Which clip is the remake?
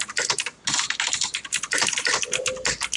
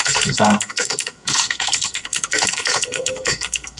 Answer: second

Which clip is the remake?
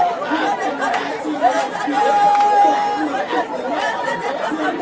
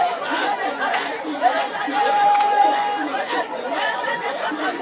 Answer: second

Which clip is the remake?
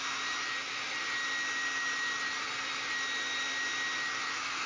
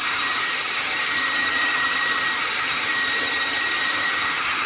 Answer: second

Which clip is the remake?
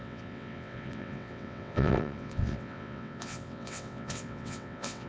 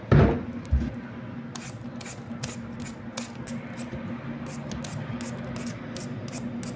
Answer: first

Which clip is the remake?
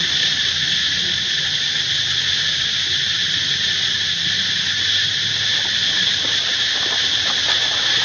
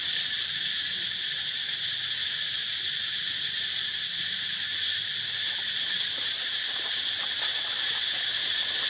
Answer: second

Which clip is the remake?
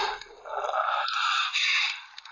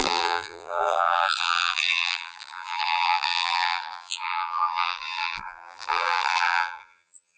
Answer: second